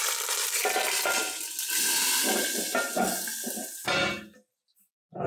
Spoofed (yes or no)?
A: no